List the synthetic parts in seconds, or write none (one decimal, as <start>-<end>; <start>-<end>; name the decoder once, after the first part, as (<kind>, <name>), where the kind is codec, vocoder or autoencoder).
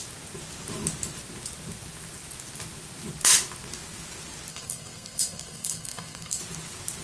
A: 4.5-6.4 (codec, SNAC)